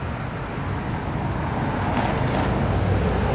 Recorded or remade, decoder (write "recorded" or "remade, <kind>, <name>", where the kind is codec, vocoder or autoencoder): recorded